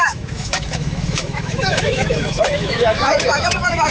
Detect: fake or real fake